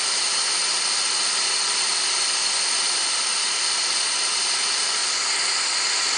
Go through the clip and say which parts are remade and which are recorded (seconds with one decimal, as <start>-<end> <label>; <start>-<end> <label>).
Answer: 0.0-0.4 remade; 0.4-4.1 recorded; 4.1-5.0 remade; 5.0-6.2 recorded

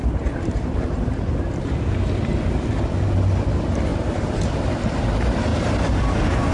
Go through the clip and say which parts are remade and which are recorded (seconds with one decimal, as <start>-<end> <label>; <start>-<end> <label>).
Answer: 0.0-3.9 recorded; 3.9-4.4 remade; 4.4-5.5 recorded; 5.5-6.0 remade; 6.0-6.5 recorded